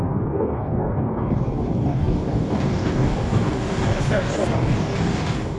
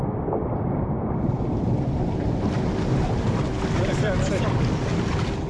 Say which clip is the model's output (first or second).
first